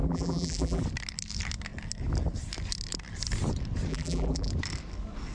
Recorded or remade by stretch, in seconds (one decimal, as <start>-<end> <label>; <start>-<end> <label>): 0.0-0.8 remade; 0.8-3.9 recorded; 3.9-4.5 remade; 4.5-5.3 recorded

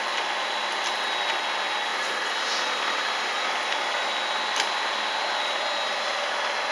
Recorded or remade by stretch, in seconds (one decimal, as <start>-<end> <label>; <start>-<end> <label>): 0.0-1.9 recorded; 1.9-4.1 remade; 4.1-6.7 recorded

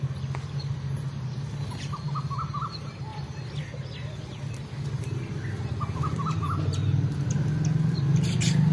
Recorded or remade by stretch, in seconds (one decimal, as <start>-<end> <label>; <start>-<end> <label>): 0.0-8.7 recorded

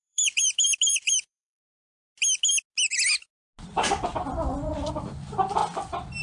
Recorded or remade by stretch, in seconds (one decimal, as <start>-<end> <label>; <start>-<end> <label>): 0.0-1.6 remade; 1.6-4.9 recorded; 4.9-5.6 remade; 5.6-6.2 recorded

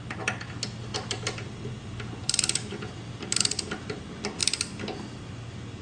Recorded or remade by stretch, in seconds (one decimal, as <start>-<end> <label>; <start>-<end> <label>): 0.0-0.9 recorded; 0.9-4.4 remade; 4.4-5.8 recorded

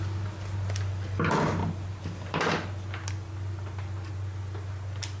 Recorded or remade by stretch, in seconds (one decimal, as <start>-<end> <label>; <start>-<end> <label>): 0.0-5.2 recorded

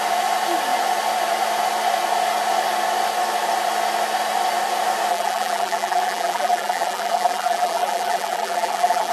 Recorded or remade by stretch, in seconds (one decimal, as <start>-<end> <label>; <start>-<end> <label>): 0.0-5.1 recorded; 5.1-9.1 remade

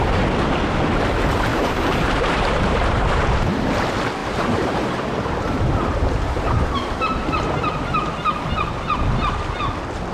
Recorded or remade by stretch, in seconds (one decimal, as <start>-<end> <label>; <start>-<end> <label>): 0.0-1.5 recorded; 1.5-3.2 remade; 3.2-4.2 recorded; 4.2-6.8 remade; 6.8-10.1 recorded